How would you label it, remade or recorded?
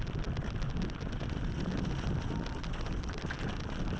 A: recorded